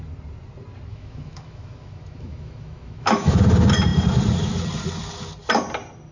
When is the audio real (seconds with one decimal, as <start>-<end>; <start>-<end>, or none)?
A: 0.0-0.9; 3.4-6.1